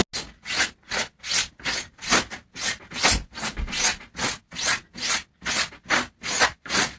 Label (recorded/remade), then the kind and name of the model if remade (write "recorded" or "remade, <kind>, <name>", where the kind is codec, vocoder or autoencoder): recorded